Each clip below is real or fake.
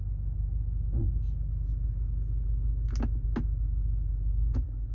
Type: real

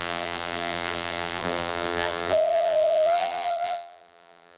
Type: fake